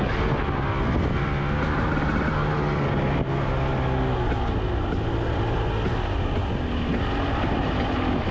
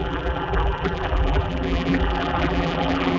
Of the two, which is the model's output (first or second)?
second